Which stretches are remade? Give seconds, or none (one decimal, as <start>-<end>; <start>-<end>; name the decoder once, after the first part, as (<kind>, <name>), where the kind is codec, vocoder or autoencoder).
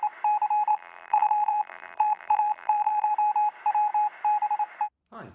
0.7-3.1 (vocoder, BigVGAN v2)